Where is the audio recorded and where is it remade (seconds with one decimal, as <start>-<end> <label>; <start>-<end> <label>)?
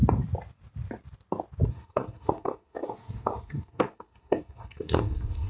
0.0-1.7 recorded; 1.7-5.5 remade